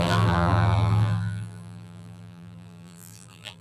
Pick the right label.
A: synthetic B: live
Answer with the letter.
A